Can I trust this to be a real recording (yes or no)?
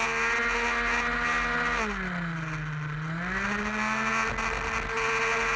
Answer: yes